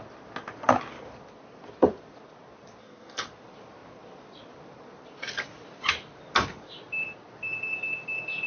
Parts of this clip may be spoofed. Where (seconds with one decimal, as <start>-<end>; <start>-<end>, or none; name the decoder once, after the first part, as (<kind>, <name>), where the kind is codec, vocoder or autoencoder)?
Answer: 2.8-3.3 (codec, DAC)